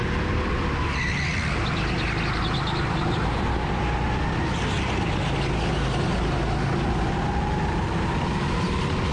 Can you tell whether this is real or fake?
real